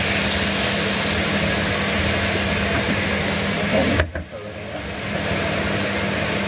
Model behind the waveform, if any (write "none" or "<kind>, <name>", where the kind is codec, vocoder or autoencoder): none